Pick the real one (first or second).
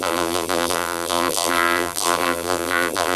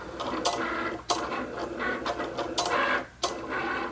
second